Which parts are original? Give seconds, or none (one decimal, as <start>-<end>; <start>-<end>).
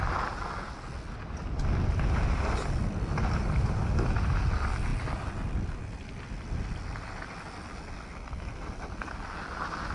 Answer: 0.0-9.9